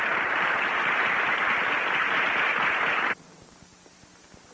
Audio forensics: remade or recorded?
recorded